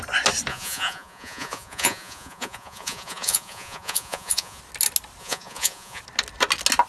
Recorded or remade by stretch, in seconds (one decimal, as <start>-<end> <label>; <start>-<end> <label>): 0.0-0.5 recorded; 0.5-4.6 remade; 4.6-5.2 recorded; 5.2-6.0 remade; 6.0-6.9 recorded